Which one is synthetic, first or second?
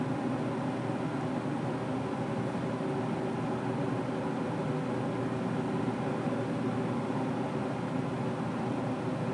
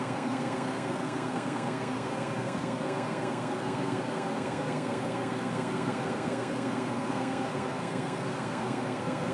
second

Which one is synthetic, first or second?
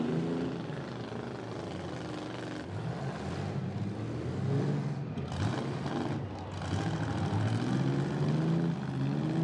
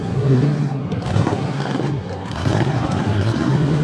second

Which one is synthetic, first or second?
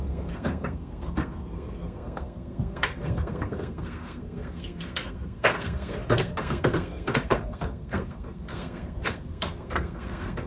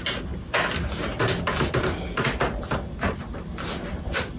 first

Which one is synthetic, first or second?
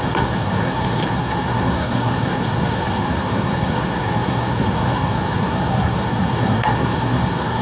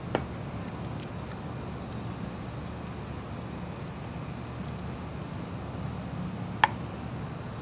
first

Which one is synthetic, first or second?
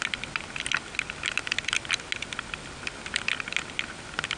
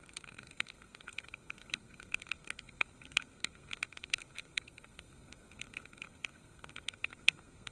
second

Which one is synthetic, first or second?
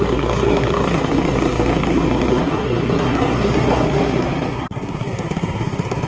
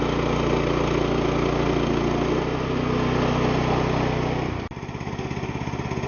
first